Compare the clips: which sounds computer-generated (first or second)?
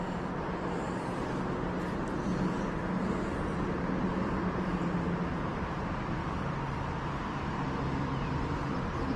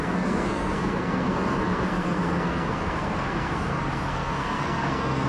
second